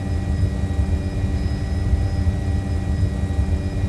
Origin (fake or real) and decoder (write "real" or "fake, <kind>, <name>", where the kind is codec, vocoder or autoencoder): real